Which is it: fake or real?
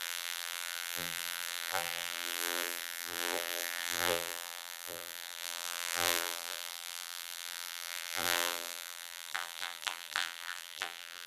fake